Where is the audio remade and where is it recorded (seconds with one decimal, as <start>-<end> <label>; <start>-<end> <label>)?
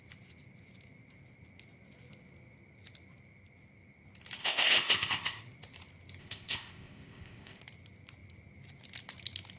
0.0-4.4 recorded; 4.4-5.4 remade; 5.4-6.2 recorded; 6.2-7.6 remade; 7.6-9.6 recorded